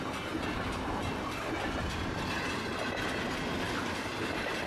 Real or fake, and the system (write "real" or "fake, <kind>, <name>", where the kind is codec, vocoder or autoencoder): real